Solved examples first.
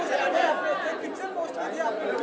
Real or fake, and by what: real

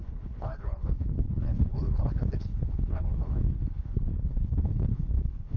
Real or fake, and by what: fake, codec, HILCodec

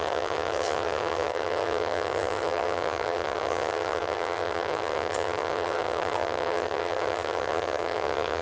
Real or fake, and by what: fake, vocoder, HiFi-GAN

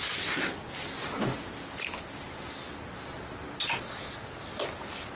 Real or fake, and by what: real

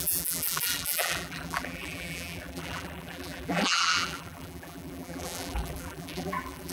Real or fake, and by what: fake, vocoder, BigVGAN v2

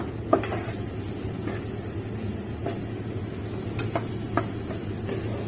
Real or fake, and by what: real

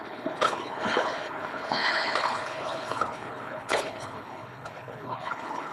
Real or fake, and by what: fake, codec, HILCodec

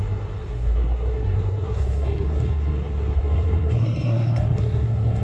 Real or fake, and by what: fake, codec, SNAC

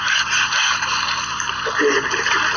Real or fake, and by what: real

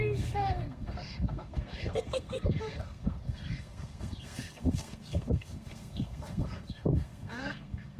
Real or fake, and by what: fake, codec, SNAC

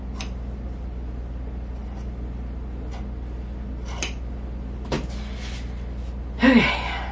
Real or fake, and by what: real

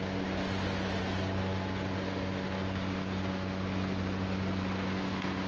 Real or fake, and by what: real